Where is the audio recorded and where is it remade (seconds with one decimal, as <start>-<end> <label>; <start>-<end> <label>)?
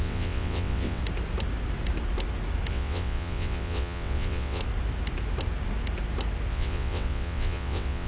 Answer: 0.0-1.0 remade; 1.0-2.7 recorded; 2.7-4.6 remade; 4.6-6.5 recorded; 6.5-8.1 remade